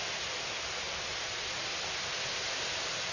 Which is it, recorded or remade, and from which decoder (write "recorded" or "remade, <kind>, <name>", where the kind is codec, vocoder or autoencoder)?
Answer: recorded